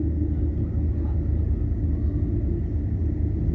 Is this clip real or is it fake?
real